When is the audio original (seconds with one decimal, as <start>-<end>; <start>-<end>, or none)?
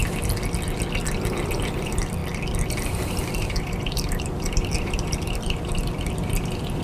0.0-1.5; 2.2-2.7